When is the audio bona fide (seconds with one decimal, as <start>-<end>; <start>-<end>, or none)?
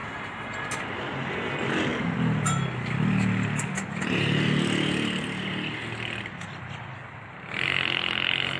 0.0-8.6